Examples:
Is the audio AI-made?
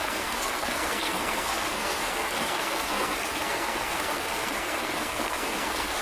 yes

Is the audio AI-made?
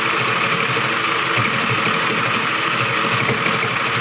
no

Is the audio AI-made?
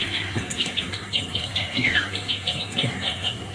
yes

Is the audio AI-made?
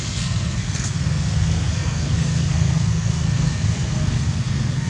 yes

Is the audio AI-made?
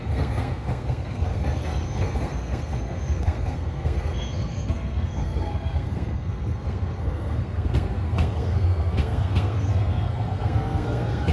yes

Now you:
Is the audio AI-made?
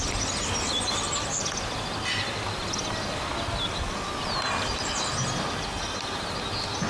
no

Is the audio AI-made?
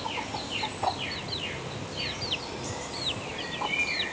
no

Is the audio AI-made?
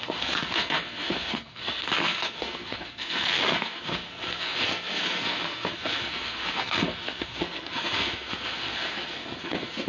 yes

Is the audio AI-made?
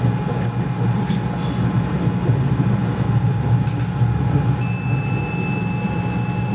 no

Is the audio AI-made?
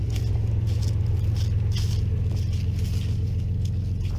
no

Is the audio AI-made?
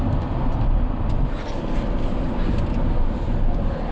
no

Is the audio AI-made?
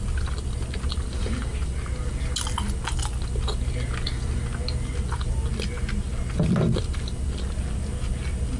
no